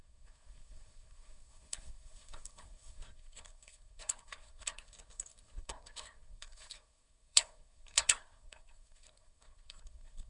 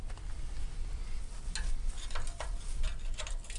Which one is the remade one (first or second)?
first